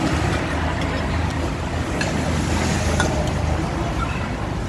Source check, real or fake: real